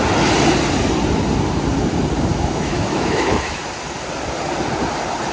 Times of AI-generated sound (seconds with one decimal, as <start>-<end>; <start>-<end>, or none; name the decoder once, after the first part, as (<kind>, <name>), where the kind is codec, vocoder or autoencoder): 2.3-3.6 (autoencoder, DAC-VAE)